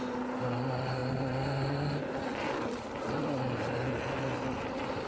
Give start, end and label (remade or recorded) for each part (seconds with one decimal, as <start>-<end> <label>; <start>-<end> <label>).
0.0-5.1 recorded